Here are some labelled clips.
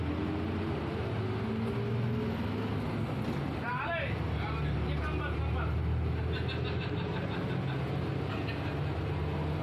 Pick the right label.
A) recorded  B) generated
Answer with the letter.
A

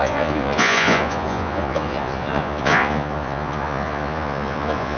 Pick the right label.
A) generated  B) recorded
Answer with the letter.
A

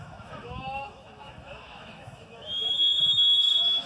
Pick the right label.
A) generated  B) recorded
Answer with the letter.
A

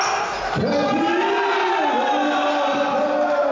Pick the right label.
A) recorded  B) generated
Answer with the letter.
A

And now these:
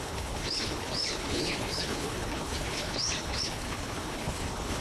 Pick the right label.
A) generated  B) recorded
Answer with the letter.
A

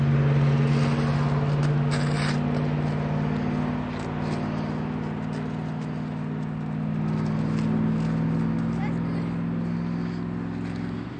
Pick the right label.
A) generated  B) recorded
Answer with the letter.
B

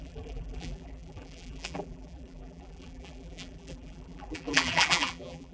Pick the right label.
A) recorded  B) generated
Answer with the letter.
B